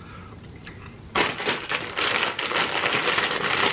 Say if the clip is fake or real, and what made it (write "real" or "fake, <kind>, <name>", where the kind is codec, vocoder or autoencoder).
real